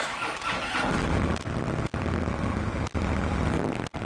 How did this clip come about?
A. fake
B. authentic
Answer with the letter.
B